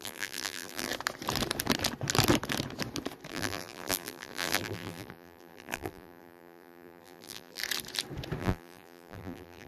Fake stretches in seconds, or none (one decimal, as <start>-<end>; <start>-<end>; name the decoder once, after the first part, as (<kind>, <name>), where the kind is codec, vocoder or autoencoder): 0.0-0.9 (vocoder, BigVGAN v2); 3.3-7.6; 8.4-9.7

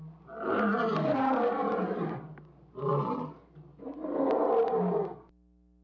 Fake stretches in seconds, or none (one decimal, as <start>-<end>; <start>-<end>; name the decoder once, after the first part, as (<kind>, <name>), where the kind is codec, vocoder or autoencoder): 1.6-2.3 (vocoder, BigVGAN v2)

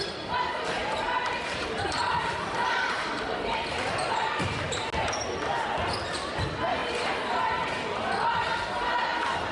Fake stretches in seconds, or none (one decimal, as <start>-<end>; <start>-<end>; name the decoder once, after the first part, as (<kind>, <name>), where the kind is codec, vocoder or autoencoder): 0.8-4.5 (vocoder, BigVGAN v2); 6.8-7.7

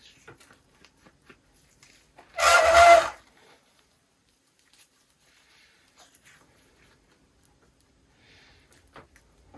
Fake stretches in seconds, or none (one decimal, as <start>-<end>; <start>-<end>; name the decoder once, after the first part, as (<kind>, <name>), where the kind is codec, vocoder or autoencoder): 2.5-6.8 (vocoder, BigVGAN v2)